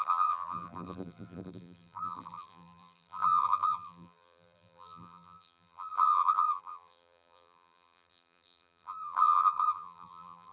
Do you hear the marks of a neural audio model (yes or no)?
yes